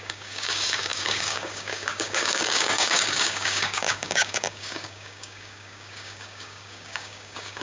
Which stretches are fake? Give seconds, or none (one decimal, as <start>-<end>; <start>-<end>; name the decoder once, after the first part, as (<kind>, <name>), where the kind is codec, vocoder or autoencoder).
0.0-7.6 (codec, DAC)